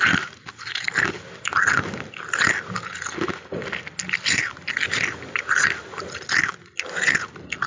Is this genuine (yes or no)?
yes